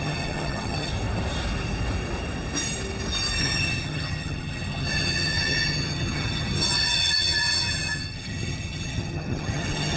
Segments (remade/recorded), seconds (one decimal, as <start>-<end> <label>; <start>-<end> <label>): 0.0-0.9 remade; 0.9-3.4 recorded; 3.4-10.0 remade